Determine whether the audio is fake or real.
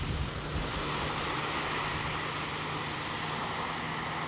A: real